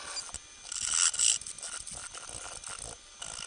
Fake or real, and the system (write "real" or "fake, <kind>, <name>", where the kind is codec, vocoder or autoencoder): real